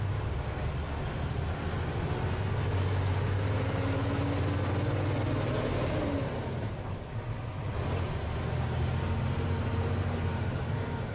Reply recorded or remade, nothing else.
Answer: recorded